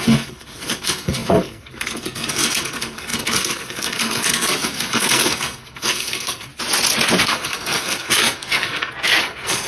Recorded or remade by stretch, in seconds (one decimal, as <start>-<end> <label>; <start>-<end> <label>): 0.0-6.5 remade; 6.5-7.2 recorded; 7.2-9.7 remade